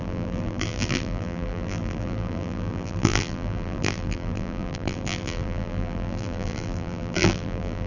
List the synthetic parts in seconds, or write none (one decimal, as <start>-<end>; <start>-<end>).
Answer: 0.0-7.9